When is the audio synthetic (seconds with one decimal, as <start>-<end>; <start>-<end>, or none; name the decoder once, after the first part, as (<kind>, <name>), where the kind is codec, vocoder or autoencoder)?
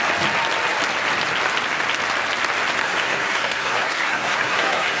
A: 2.8-5.0 (codec, SNAC)